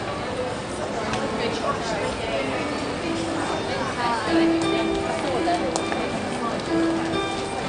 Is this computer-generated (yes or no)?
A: no